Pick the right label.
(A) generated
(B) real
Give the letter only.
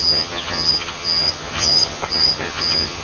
A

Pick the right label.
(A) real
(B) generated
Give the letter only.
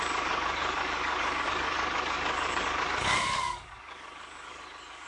B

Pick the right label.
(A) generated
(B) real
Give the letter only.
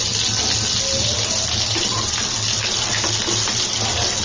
B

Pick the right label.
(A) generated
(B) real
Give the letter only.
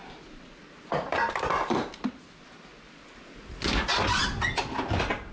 B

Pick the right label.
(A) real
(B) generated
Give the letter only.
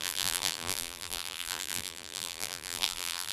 B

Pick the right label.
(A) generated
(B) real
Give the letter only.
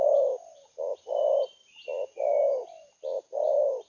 B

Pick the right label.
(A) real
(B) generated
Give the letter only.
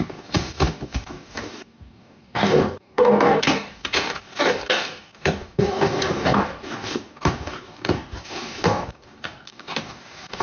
B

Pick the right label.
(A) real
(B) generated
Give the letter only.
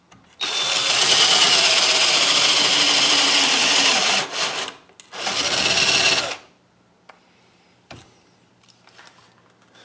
A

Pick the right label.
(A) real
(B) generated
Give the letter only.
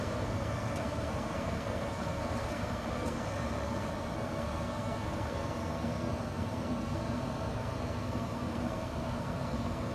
B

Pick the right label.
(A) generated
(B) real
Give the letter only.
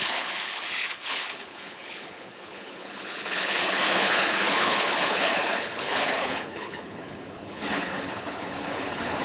A